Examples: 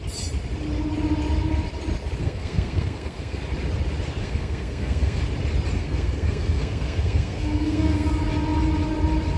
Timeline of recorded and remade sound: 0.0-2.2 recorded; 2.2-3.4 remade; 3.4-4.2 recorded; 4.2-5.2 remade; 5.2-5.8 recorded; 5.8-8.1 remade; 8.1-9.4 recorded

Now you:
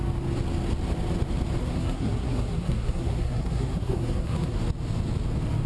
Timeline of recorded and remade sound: 0.0-1.6 recorded; 1.6-4.6 remade; 4.6-5.7 recorded

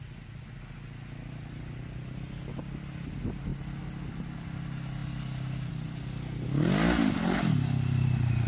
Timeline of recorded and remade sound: 0.0-8.5 recorded

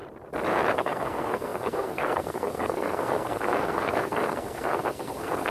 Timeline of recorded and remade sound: 0.0-0.7 recorded; 0.7-5.5 remade